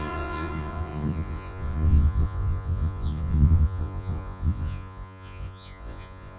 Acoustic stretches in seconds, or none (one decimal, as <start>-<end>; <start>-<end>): none